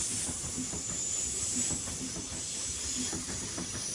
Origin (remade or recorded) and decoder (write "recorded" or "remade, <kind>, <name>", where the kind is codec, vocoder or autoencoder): remade, vocoder, BigVGAN v2